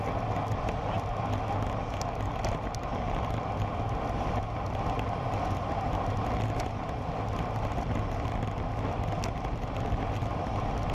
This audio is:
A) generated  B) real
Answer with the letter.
B